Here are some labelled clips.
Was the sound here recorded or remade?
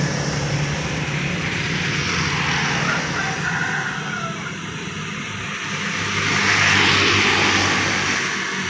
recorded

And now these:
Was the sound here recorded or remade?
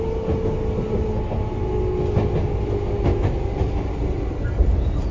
recorded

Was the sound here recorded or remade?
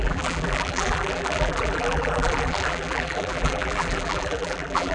remade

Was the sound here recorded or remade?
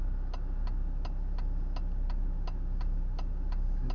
recorded